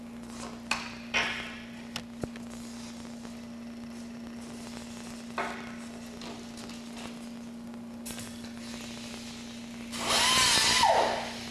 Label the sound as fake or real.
real